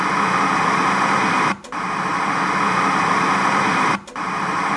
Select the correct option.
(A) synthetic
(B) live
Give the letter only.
B